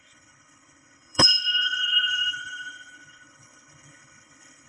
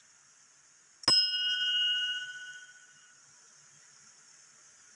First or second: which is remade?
first